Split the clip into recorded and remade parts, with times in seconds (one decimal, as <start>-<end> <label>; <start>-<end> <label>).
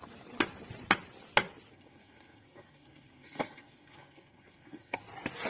0.0-1.7 recorded; 1.7-5.0 remade; 5.0-5.5 recorded